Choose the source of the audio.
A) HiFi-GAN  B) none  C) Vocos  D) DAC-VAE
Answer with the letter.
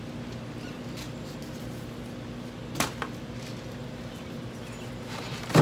B